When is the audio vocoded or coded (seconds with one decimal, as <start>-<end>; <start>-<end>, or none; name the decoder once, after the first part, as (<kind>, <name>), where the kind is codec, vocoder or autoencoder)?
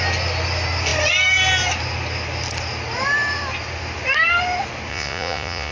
4.9-5.7 (vocoder, Vocos)